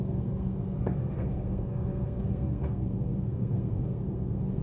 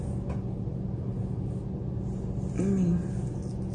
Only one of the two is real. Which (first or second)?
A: second